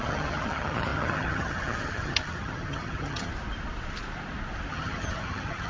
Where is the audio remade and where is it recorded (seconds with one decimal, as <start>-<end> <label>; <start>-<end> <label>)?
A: 0.0-3.3 remade; 3.3-4.7 recorded; 4.7-5.7 remade